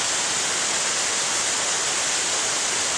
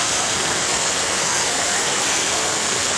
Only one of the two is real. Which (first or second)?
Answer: first